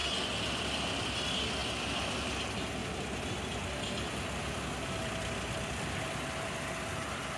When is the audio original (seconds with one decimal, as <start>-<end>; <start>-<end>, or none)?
0.0-7.4